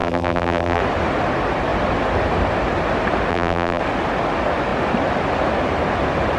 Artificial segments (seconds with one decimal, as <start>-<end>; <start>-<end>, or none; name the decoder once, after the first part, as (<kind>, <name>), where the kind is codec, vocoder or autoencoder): 0.0-0.8 (vocoder, BigVGAN v2); 3.3-3.8

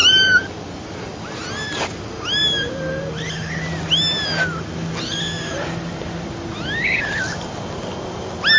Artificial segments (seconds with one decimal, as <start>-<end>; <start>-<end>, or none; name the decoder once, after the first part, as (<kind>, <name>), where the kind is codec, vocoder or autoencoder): 0.0-1.0 (vocoder, BigVGAN v2)

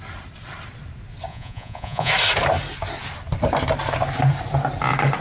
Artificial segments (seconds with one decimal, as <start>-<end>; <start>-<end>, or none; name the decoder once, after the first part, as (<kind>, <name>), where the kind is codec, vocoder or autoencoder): 1.3-2.1 (vocoder, Vocos)